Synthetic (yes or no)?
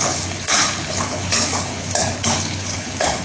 yes